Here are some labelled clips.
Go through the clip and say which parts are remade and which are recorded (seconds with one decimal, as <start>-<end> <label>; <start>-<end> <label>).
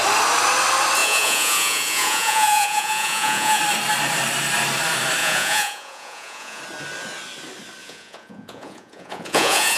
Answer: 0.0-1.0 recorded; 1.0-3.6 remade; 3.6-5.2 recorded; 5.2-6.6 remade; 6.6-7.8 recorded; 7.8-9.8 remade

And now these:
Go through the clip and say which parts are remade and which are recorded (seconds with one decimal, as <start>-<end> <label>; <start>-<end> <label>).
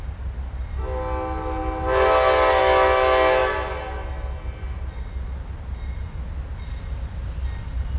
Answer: 0.0-8.0 recorded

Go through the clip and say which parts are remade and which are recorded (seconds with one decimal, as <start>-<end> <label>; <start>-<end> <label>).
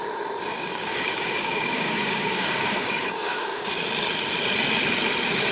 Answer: 0.0-0.5 recorded; 0.5-3.8 remade; 3.8-5.5 recorded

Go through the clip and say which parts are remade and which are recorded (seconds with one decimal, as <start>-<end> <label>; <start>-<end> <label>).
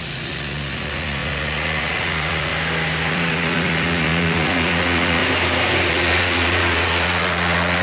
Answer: 0.0-2.5 remade; 2.5-3.1 recorded; 3.1-5.2 remade; 5.2-5.9 recorded; 5.9-7.8 remade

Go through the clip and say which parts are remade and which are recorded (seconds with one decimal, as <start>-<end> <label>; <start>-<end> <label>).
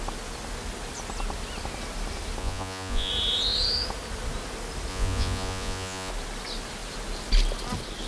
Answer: 0.0-2.4 recorded; 2.4-3.1 remade; 3.1-4.9 recorded; 4.9-6.1 remade; 6.1-8.1 recorded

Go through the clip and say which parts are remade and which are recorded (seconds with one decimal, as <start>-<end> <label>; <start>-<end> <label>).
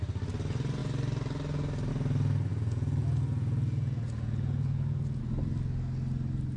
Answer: 0.0-2.5 recorded; 2.5-5.2 remade; 5.2-6.6 recorded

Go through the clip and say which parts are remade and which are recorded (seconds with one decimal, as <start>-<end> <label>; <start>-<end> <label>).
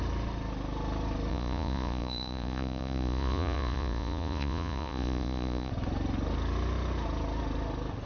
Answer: 0.0-1.3 recorded; 1.3-5.7 remade; 5.7-8.1 recorded